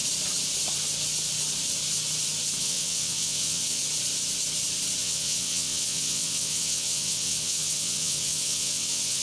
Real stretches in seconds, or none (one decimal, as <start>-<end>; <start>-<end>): 0.0-2.6; 3.8-5.0